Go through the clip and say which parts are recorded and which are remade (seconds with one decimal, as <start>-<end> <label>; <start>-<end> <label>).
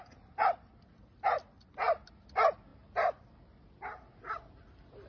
0.0-5.1 recorded